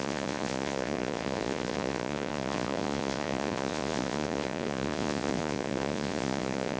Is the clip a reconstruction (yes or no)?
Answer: yes